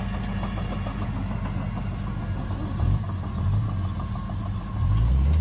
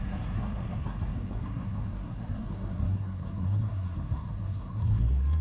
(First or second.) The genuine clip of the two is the first